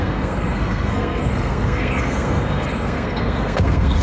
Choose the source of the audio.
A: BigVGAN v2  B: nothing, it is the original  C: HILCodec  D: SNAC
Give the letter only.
D